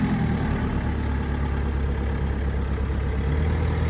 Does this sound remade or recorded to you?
recorded